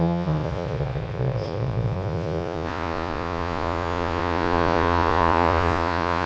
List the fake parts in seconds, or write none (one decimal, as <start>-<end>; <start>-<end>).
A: 0.0-6.3